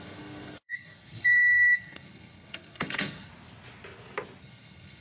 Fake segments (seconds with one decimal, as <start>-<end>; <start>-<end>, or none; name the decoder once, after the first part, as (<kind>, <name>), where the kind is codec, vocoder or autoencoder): 0.0-3.3 (codec, SNAC); 4.4-5.0